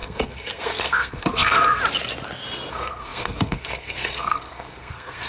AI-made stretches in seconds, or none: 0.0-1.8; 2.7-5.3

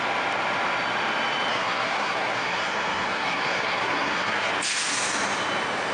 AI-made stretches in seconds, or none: 1.5-4.5

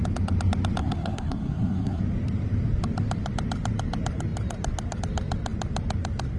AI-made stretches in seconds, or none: 0.8-2.0

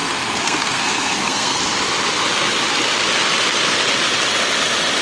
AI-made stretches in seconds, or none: 0.0-1.6

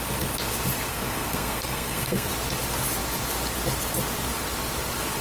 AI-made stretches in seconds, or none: 0.9-2.3

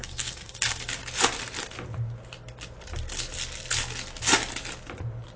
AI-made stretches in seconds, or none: 0.0-0.9

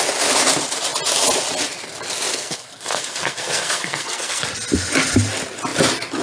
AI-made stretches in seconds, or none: 2.3-4.4